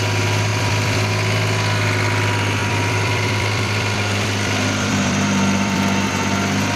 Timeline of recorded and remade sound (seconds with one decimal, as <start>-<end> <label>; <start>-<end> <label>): 0.0-0.5 recorded; 0.5-1.1 remade; 1.1-2.6 recorded; 2.6-6.1 remade; 6.1-6.8 recorded